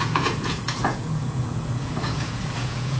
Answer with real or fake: fake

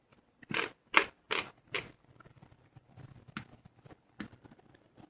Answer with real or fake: real